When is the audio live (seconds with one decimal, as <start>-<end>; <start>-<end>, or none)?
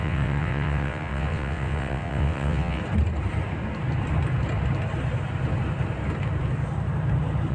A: 2.8-7.5